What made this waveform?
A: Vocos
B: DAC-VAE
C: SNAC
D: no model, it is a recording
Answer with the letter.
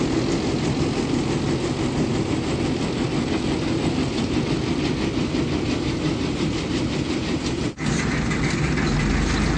D